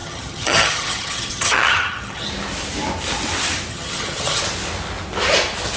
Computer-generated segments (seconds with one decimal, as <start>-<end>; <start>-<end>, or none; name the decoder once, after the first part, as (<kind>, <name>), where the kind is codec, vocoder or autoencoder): 0.0-2.3 (vocoder, HiFi-GAN); 3.7-4.4